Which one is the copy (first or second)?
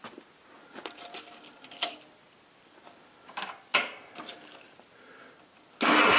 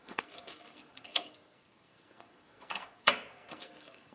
second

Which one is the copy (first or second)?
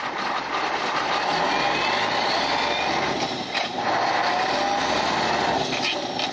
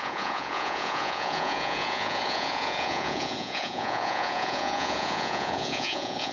second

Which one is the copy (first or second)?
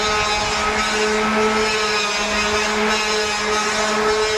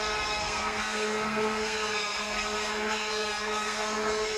second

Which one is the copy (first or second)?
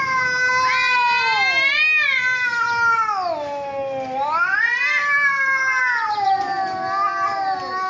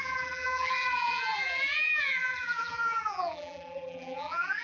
second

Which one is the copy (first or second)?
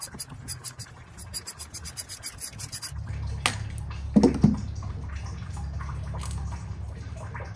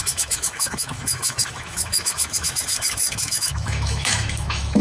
second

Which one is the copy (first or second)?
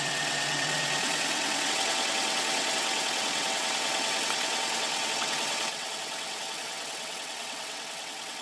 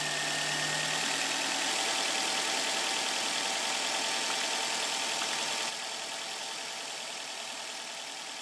first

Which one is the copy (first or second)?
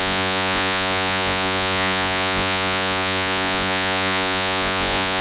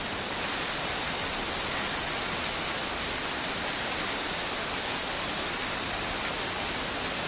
first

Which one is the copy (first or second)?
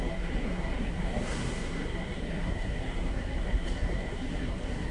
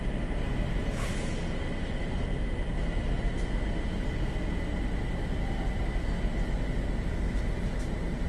first